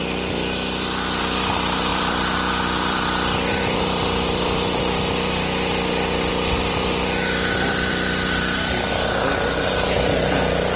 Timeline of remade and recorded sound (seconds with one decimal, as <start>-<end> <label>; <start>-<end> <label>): 0.0-1.9 recorded; 1.9-4.8 remade; 4.8-6.3 recorded; 6.3-8.9 remade; 8.9-10.8 recorded